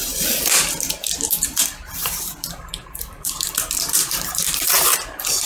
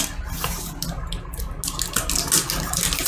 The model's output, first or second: first